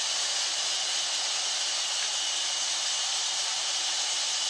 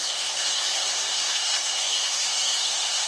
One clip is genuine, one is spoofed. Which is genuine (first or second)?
first